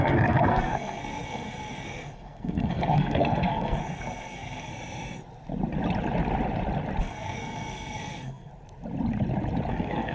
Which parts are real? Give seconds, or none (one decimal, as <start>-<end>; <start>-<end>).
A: 4.7-7.0; 8.5-9.7